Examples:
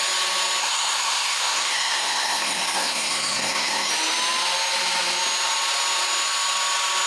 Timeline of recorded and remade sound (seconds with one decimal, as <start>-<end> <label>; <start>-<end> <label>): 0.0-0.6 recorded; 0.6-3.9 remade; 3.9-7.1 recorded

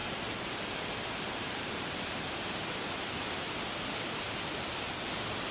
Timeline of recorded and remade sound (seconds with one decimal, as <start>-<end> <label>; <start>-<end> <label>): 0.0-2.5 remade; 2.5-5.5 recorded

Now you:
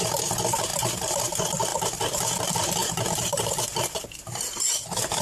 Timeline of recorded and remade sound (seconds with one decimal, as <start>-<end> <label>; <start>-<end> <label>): 0.0-0.7 recorded; 0.7-1.2 remade; 1.2-1.7 recorded; 1.7-2.4 remade; 2.4-2.8 recorded; 2.8-3.6 remade; 3.6-5.2 recorded